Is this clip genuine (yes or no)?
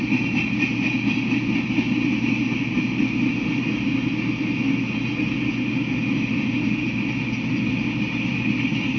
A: yes